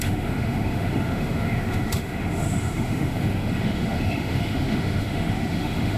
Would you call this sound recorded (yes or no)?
no